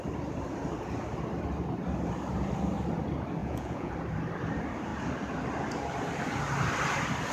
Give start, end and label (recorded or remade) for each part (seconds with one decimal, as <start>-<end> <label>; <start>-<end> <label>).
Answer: 0.0-3.4 recorded; 3.4-3.9 remade; 3.9-7.3 recorded